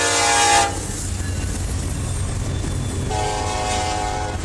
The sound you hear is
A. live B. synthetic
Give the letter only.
A